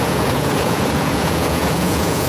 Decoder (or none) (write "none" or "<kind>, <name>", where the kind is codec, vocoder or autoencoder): vocoder, Vocos